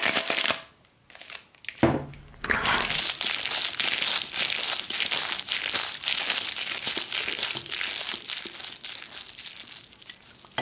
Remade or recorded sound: recorded